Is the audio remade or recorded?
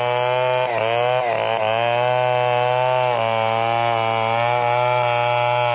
recorded